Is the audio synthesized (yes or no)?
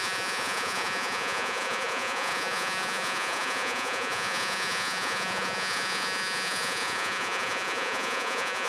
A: yes